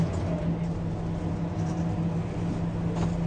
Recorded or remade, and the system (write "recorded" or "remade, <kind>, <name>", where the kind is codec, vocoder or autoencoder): recorded